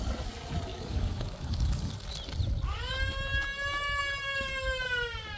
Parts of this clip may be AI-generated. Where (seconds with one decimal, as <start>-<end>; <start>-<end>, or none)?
0.7-1.9

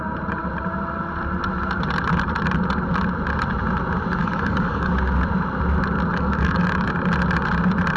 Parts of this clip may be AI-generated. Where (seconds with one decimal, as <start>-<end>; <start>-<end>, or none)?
4.2-4.9; 6.1-6.9